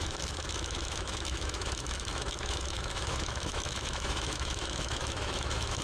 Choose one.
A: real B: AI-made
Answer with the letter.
B